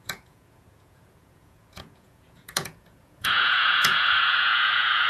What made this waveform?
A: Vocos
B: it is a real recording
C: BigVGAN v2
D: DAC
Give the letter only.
A